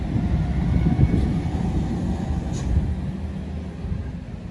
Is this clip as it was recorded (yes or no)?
yes